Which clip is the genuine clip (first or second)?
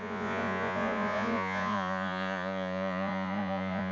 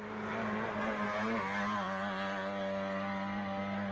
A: second